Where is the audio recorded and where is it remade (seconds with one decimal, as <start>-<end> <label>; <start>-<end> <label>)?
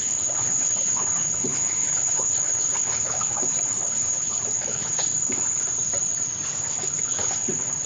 0.0-5.1 remade; 5.1-6.7 recorded; 6.7-7.9 remade